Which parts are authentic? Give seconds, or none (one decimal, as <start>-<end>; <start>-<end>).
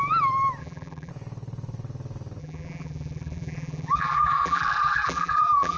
0.0-0.6; 1.1-2.4